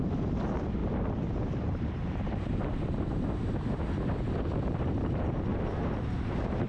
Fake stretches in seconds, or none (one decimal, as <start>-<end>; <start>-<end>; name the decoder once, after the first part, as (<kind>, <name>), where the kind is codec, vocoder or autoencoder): 0.8-3.8 (vocoder, BigVGAN v2); 5.5-6.7

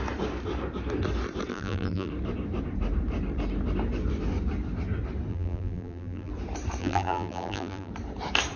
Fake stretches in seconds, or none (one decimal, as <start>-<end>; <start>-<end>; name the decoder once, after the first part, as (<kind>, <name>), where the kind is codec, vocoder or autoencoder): 1.5-2.1 (vocoder, BigVGAN v2); 5.3-6.3; 6.8-7.9

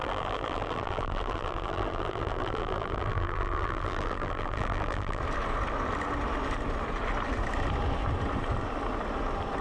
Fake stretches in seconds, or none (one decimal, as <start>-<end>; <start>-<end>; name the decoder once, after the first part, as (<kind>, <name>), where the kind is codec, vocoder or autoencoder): 0.0-5.2 (vocoder, BigVGAN v2)

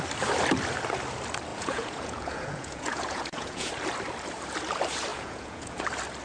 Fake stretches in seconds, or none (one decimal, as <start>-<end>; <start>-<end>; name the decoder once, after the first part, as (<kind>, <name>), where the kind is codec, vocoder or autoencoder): 1.5-3.7 (vocoder, Vocos); 5.1-5.8